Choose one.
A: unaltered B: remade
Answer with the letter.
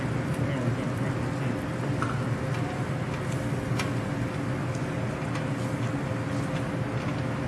A